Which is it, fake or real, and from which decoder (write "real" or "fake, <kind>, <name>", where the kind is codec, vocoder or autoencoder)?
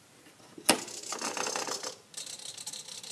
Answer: real